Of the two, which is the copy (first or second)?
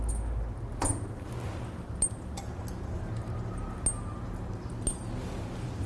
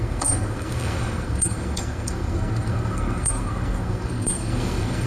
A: second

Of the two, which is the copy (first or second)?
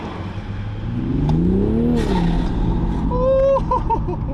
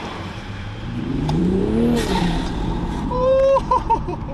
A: second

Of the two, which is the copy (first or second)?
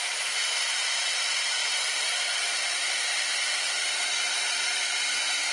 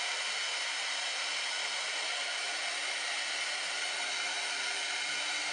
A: first